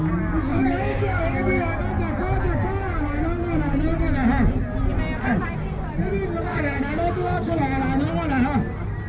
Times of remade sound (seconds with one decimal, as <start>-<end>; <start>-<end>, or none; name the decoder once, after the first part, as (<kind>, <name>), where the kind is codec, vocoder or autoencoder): 0.5-1.8 (codec, DAC); 6.5-7.6